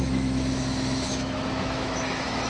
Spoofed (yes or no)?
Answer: yes